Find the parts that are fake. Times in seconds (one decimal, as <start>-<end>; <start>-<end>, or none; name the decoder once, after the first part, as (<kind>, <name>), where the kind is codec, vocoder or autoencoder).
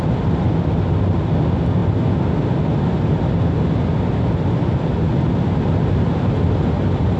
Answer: none